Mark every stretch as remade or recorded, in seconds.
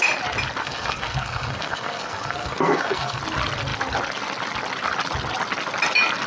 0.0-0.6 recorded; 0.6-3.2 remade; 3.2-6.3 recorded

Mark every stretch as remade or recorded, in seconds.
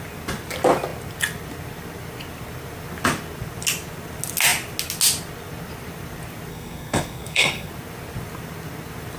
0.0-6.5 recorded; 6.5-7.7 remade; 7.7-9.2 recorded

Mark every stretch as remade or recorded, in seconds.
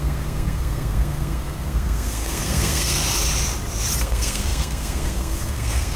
0.0-3.0 remade; 3.0-4.0 recorded; 4.0-6.0 remade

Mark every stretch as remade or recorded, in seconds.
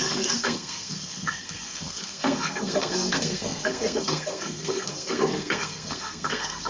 0.0-6.7 remade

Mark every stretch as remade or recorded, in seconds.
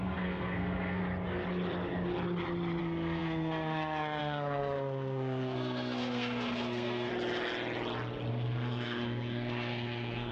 0.0-1.0 remade; 1.0-2.8 recorded; 2.8-7.1 remade; 7.1-8.3 recorded; 8.3-10.3 remade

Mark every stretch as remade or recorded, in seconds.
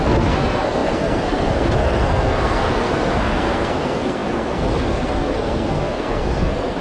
0.0-6.8 remade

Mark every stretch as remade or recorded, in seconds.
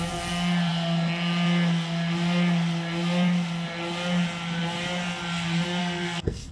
0.0-5.8 recorded; 5.8-6.5 remade